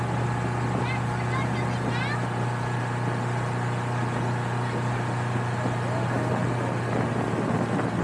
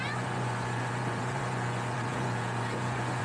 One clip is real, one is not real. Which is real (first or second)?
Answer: first